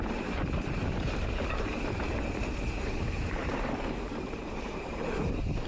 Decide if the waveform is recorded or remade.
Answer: remade